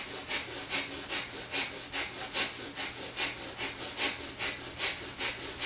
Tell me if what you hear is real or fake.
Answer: real